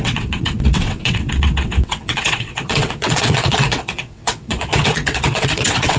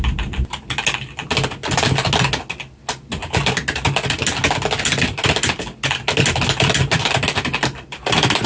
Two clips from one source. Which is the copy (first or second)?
first